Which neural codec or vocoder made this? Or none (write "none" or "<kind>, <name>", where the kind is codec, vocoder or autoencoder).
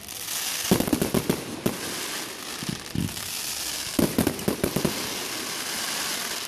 none